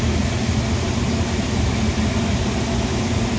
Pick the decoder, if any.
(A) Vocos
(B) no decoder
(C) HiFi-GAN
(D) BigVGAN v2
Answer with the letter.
B